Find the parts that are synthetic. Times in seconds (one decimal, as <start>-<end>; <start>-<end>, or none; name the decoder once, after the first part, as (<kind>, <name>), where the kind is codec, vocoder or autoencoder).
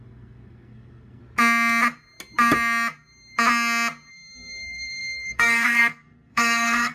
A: 0.0-1.2 (codec, SNAC); 4.1-6.9